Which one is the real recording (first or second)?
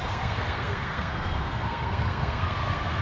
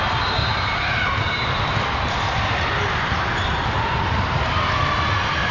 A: second